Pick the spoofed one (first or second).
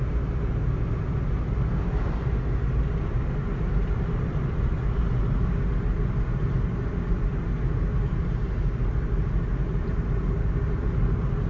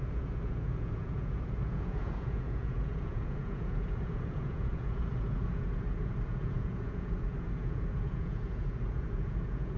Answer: second